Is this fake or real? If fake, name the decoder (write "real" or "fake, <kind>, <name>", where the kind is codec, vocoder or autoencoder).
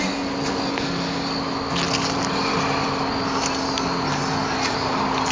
real